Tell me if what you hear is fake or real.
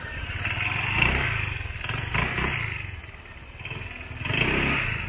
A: real